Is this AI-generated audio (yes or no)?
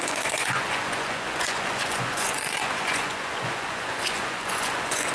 yes